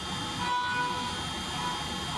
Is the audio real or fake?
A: real